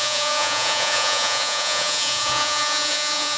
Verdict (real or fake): fake